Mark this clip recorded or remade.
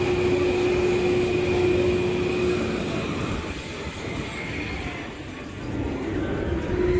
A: recorded